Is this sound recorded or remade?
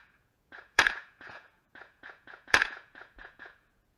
remade